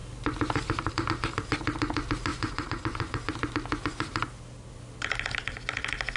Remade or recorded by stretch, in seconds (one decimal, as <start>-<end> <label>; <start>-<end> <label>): 0.0-2.3 recorded; 2.3-3.3 remade; 3.3-6.2 recorded